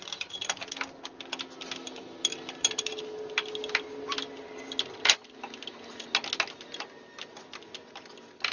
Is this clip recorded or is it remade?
recorded